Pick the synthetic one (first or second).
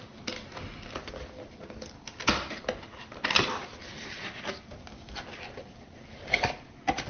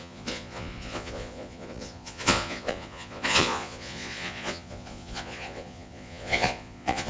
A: second